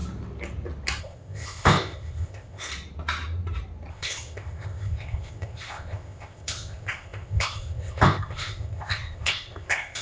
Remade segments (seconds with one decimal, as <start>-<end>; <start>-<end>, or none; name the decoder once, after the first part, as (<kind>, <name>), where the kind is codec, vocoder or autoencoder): 1.0-2.7 (codec, ZipCodec); 3.9-10.0